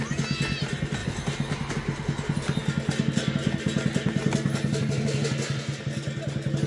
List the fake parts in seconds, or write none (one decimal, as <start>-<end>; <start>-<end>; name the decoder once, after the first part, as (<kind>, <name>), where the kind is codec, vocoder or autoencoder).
none